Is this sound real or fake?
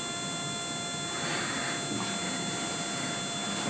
real